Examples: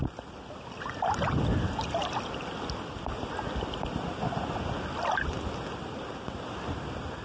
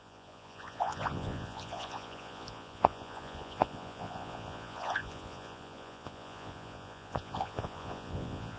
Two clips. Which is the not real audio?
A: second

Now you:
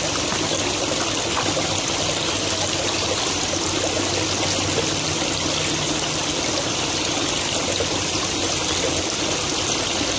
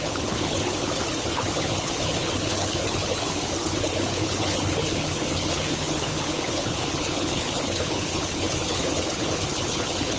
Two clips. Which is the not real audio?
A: second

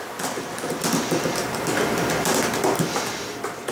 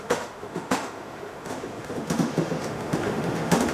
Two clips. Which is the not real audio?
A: second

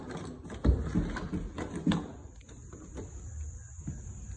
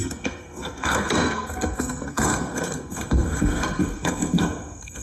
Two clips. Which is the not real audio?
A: second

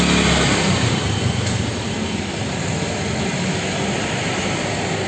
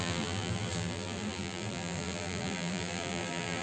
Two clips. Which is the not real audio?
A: second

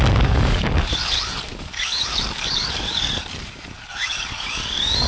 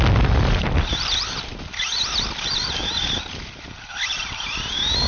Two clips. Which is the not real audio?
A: first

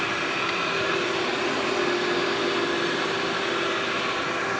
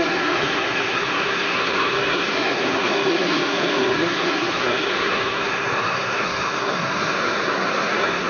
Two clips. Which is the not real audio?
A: second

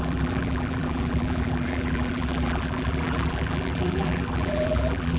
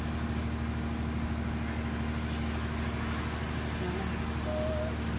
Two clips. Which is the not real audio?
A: first